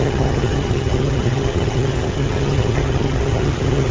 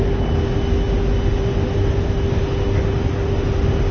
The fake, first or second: first